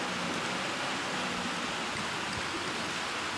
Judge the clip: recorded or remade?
recorded